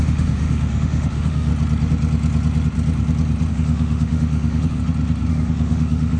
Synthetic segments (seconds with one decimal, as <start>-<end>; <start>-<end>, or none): 0.0-1.5; 3.5-4.8; 5.3-6.2